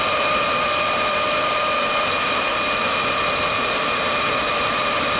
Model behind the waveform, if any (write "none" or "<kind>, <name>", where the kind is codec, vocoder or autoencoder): none